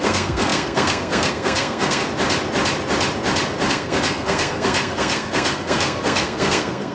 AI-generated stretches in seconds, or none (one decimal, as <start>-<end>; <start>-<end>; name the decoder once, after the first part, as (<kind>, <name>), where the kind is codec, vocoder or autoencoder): 0.0-2.0 (codec, SNAC); 3.7-6.9